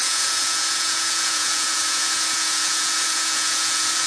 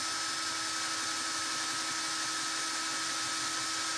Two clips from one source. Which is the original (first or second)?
second